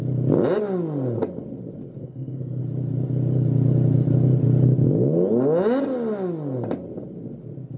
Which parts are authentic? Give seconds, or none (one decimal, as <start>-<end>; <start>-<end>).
0.0-2.0; 2.6-7.8